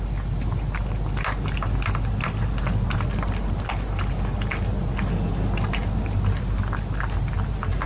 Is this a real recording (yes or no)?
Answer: yes